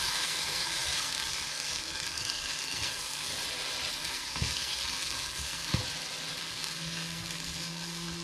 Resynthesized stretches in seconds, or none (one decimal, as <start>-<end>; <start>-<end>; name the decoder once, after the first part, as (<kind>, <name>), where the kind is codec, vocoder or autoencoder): 0.0-3.3 (codec, SNAC); 3.9-5.8; 6.4-8.2